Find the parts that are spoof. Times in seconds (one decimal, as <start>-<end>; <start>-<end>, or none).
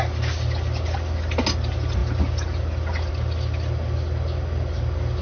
none